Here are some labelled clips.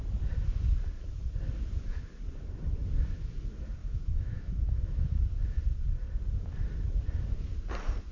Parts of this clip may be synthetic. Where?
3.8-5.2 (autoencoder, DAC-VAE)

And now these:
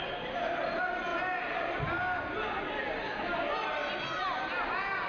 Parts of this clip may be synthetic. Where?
none

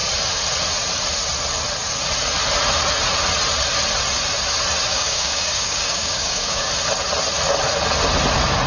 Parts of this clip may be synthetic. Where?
4.9-6.7 (codec, DAC)

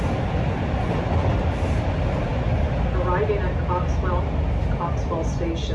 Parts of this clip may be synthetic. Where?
none

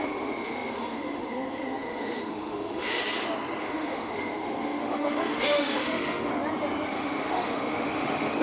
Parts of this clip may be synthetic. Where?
0.0-3.0 (autoencoder, DAC-VAE); 3.6-6.3; 6.9-8.4